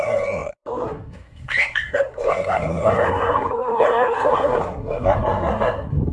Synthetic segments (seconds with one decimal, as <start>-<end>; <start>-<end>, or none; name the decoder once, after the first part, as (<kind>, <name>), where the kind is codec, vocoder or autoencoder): 0.0-6.1 (codec, SNAC)

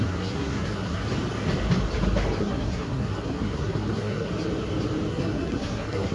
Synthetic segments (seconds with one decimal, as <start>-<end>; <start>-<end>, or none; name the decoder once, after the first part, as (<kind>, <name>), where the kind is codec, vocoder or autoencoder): 0.0-1.0 (codec, SNAC); 2.4-4.3; 5.1-6.1

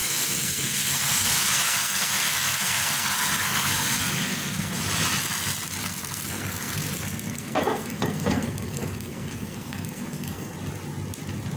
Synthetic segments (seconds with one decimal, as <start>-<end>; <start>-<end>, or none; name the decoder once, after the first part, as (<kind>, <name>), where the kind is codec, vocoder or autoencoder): 0.0-4.7 (codec, SNAC); 5.8-10.5

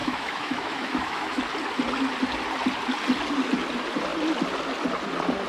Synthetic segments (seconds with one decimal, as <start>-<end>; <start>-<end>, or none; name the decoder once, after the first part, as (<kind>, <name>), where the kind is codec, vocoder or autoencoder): 0.0-1.4 (autoencoder, DAC-VAE)

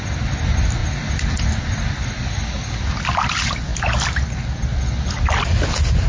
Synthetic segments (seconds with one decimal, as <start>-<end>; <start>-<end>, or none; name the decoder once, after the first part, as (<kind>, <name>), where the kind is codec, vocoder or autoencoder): none

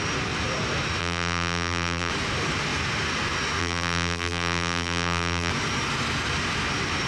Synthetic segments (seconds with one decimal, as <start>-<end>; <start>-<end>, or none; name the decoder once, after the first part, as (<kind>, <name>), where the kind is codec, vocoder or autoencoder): 1.0-2.1 (vocoder, BigVGAN v2); 3.6-5.5

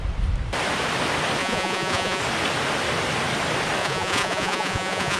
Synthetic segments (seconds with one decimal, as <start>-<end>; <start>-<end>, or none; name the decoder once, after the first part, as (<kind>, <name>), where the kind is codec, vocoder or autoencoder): 1.4-2.2 (vocoder, Vocos); 3.8-5.2

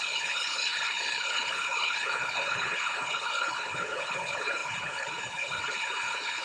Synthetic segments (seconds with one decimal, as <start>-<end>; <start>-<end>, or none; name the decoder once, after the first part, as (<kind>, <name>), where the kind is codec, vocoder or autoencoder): 0.0-6.4 (codec, HILCodec)